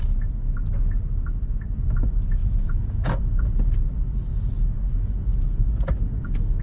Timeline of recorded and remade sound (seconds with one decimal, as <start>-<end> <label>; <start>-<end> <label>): 0.0-2.4 recorded; 2.4-3.7 remade; 3.7-4.3 recorded; 4.3-5.6 remade; 5.6-6.6 recorded